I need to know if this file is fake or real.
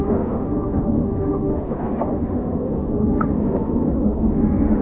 fake